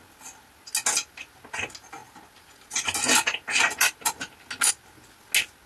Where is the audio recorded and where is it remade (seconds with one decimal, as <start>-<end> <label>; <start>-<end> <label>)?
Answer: 0.0-5.7 recorded

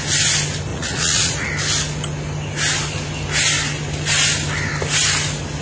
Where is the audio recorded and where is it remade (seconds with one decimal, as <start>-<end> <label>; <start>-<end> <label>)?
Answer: 0.0-0.7 recorded; 0.7-1.5 remade; 1.5-5.6 recorded

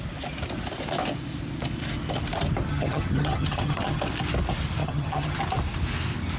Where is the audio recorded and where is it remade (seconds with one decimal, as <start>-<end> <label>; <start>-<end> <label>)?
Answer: 0.0-2.7 recorded; 2.7-4.0 remade; 4.0-4.8 recorded; 4.8-5.4 remade; 5.4-6.4 recorded